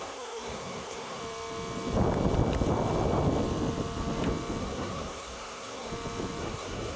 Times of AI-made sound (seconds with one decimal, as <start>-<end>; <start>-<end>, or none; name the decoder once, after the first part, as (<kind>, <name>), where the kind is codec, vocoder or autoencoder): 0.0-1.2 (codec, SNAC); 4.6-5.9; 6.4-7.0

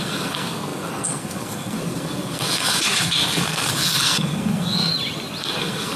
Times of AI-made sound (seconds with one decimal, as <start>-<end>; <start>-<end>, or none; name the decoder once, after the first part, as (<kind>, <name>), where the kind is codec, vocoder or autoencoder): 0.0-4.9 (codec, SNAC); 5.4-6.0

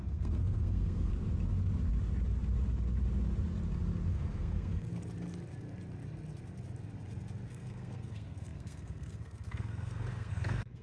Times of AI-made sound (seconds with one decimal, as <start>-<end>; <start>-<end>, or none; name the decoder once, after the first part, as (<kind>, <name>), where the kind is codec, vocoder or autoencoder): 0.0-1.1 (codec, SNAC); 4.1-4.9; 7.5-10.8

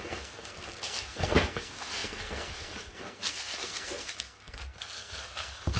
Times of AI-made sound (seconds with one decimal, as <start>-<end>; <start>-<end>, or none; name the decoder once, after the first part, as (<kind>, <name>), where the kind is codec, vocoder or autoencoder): 0.0-5.8 (codec, SNAC)

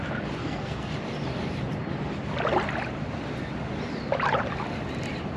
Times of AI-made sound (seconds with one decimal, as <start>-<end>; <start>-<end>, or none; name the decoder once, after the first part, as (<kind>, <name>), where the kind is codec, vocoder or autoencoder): 0.4-0.9 (codec, SNAC)

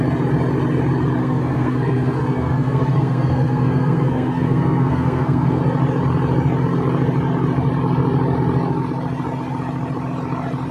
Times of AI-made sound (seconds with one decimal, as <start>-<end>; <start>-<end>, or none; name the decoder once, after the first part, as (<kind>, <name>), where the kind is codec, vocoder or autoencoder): 1.2-5.6 (codec, SNAC)

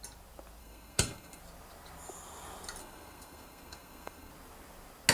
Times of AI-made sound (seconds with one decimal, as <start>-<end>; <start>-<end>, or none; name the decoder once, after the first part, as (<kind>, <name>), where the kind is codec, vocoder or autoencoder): 0.6-1.4 (codec, SNAC); 2.8-4.3